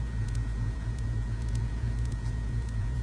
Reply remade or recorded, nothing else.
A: remade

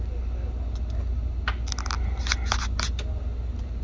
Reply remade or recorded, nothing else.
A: recorded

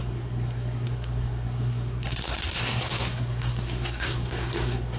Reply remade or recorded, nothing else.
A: remade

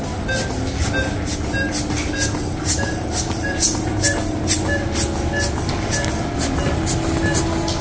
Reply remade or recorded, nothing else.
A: recorded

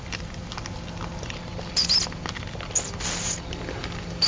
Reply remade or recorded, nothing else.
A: recorded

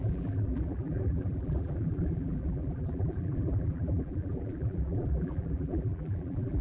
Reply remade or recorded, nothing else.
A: remade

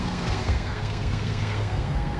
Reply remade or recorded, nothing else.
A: remade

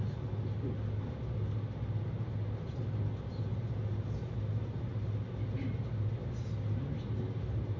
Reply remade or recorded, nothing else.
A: recorded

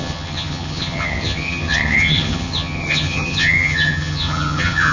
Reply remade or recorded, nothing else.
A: remade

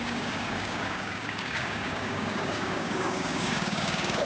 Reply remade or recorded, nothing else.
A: remade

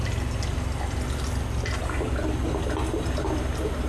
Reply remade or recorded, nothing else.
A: recorded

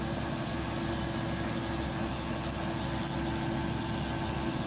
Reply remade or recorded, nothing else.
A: recorded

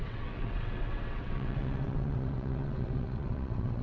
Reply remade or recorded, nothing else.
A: remade